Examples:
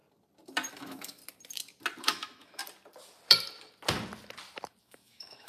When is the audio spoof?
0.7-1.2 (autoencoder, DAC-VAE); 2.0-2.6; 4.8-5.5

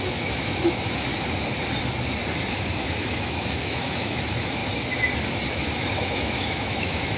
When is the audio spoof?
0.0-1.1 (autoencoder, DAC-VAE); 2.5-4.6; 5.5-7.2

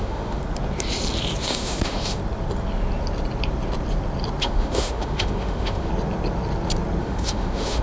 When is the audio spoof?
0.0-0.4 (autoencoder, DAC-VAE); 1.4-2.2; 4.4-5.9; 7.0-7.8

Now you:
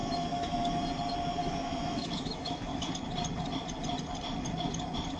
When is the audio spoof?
0.0-0.9 (autoencoder, DAC-VAE); 1.4-2.9

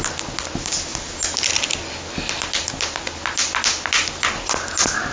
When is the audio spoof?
none

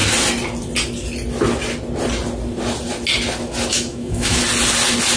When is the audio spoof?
3.7-4.4 (autoencoder, DAC-VAE)

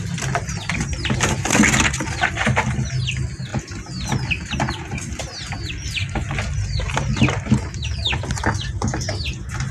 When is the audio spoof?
none

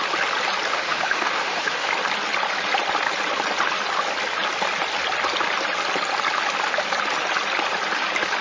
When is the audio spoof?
0.7-1.9 (autoencoder, DAC-VAE)